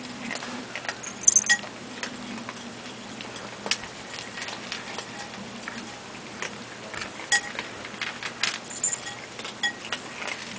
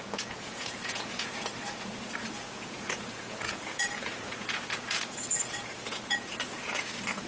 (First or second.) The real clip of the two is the first